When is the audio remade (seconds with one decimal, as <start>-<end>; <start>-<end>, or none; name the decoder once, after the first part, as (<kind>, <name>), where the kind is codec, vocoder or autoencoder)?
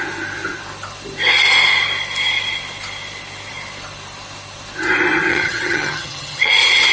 5.3-6.5 (vocoder, HiFi-GAN)